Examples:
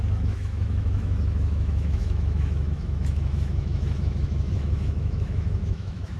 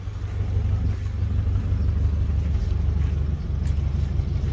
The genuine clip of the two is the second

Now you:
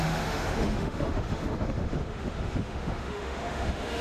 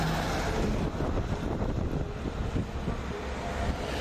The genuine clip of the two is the second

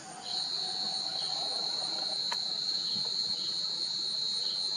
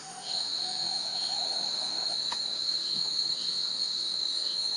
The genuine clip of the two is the first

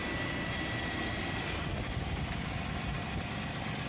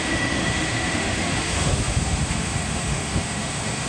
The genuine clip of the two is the first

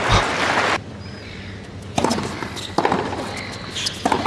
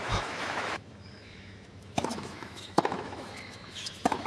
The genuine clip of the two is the first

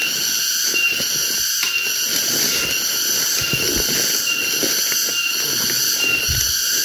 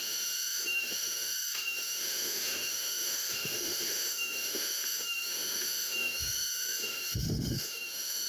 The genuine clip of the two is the first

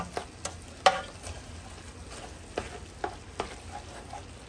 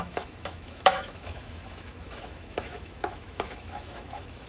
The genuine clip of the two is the first